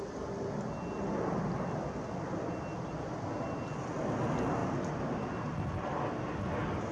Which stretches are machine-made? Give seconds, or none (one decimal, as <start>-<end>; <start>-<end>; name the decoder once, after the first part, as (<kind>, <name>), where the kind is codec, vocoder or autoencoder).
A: none